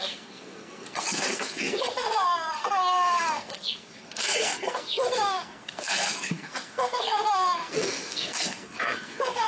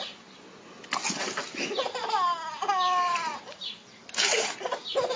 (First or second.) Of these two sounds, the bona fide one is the second